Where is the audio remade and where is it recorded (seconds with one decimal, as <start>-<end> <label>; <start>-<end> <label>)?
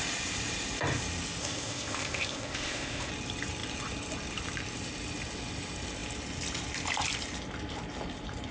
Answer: 0.0-1.4 recorded; 1.4-3.1 remade; 3.1-8.5 recorded